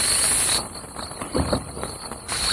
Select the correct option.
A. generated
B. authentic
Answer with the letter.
B